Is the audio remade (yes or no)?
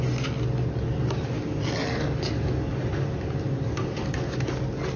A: no